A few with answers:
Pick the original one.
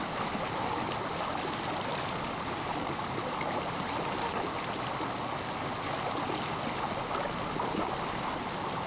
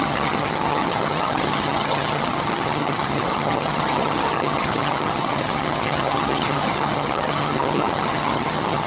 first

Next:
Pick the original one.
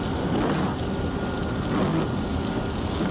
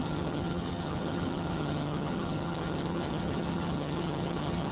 first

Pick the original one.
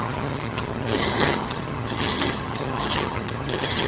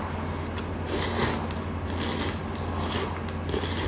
second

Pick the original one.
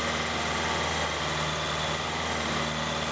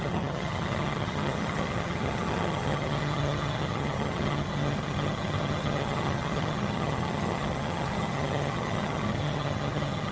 first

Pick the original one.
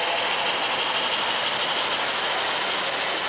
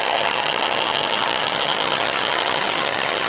first